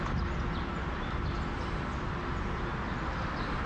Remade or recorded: recorded